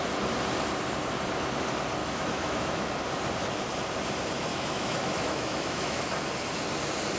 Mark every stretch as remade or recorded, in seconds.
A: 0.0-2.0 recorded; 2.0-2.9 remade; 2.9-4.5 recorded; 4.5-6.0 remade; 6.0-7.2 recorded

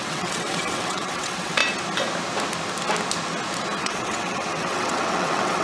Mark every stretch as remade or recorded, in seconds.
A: 0.0-1.6 remade; 1.6-3.8 recorded; 3.8-5.6 remade

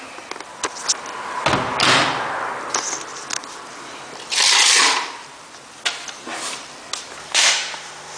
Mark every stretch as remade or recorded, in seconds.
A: 0.0-7.2 recorded; 7.2-8.2 remade

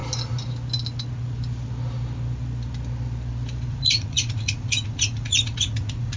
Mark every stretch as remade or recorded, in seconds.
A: 0.0-3.7 recorded; 3.7-6.2 remade